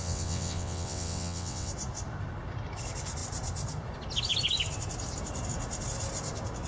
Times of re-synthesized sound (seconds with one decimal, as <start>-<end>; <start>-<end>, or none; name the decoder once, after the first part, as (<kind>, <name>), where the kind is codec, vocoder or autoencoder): 0.0-1.7 (vocoder, WaveNeXt)